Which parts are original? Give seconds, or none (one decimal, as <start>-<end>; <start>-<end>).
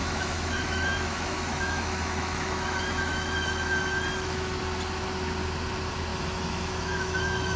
4.6-6.1